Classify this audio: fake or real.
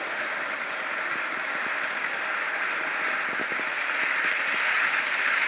real